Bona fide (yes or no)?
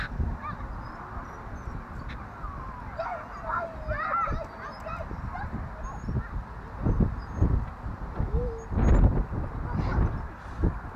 yes